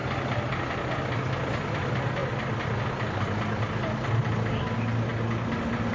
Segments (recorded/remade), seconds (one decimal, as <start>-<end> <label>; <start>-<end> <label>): 0.0-5.9 recorded